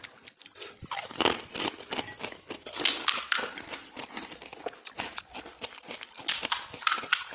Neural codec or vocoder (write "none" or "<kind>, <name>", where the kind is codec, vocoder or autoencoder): none